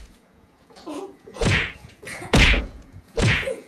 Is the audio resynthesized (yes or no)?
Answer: yes